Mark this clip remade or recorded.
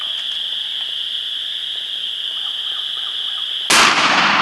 recorded